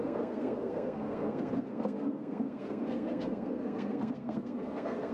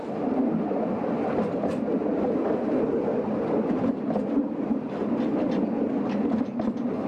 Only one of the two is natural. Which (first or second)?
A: second